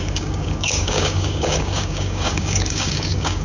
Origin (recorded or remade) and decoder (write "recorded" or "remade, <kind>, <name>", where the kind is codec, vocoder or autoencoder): remade, codec, DAC